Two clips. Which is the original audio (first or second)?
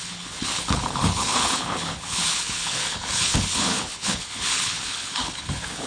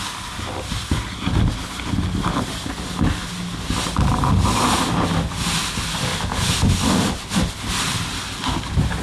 second